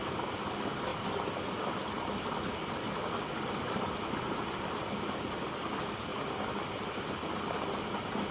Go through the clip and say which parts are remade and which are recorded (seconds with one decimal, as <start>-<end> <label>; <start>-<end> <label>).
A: 0.0-8.3 recorded